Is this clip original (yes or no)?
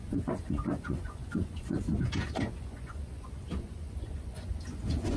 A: no